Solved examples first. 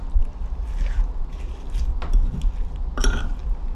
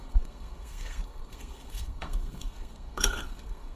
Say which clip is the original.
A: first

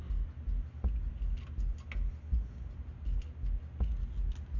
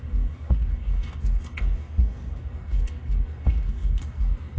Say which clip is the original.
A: first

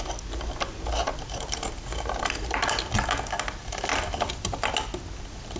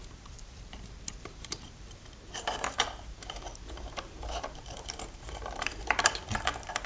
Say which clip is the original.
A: first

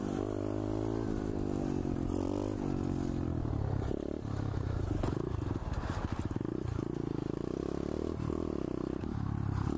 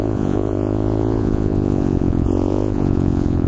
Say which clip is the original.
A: first